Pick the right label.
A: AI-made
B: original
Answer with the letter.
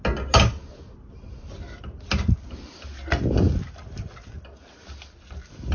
B